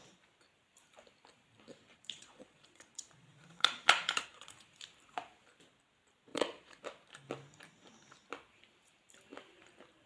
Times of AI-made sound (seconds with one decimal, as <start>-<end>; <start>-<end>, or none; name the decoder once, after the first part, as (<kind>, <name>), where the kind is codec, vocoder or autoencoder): 1.9-4.8 (vocoder, Vocos); 6.3-6.8